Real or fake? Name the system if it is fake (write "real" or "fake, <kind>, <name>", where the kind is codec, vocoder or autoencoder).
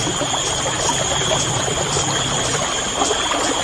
real